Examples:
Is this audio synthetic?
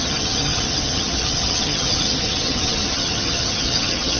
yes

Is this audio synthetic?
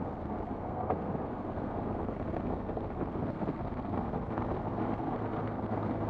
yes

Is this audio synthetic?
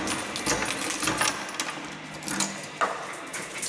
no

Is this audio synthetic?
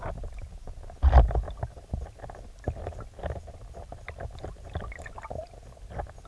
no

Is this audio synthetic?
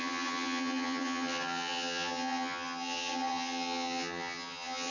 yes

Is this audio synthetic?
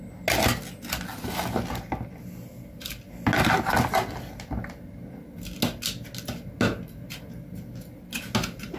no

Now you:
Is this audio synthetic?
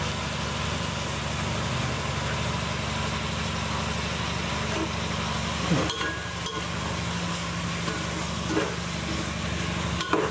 no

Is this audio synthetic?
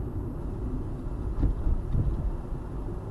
no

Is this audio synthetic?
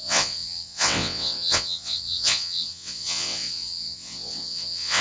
yes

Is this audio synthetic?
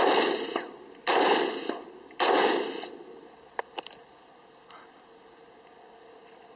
no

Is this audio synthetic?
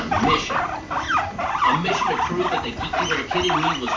no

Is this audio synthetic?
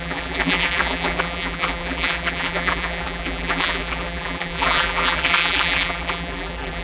yes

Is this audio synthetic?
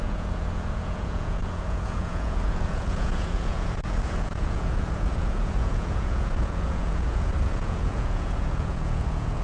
yes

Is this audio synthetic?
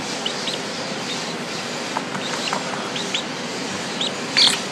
no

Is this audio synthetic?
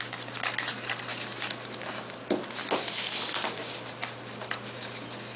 no